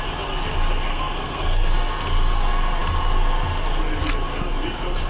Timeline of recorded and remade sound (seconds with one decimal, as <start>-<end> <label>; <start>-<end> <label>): 0.0-0.9 recorded; 0.9-1.7 remade; 1.7-5.1 recorded